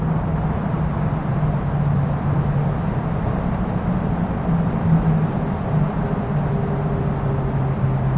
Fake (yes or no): no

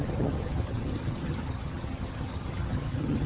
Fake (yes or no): yes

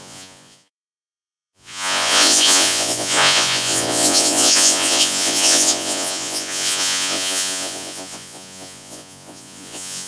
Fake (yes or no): yes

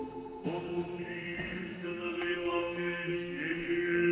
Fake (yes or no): yes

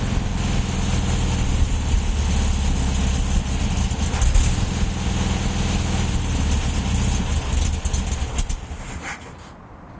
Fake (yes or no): no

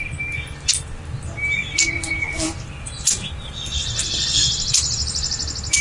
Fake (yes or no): no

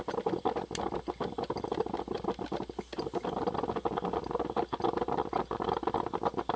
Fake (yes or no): no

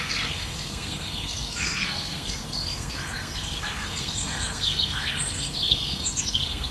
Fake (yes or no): yes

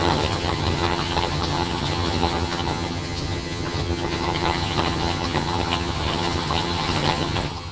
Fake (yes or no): yes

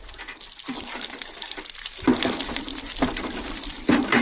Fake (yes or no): no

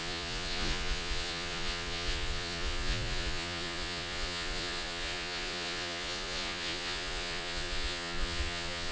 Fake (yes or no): yes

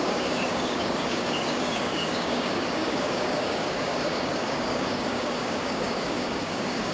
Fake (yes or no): yes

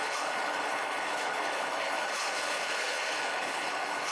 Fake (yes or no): yes